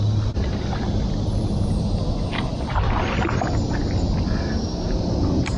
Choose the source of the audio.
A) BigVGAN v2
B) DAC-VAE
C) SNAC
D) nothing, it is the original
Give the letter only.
D